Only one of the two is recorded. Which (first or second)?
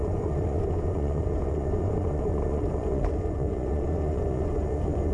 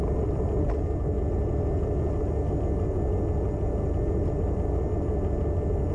second